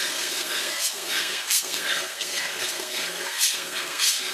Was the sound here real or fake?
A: fake